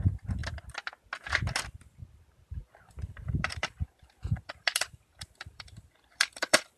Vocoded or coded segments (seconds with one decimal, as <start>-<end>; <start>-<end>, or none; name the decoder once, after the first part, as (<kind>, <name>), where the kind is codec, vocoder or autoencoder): 2.6-6.8 (vocoder, BigVGAN v2)